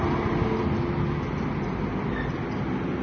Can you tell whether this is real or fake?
real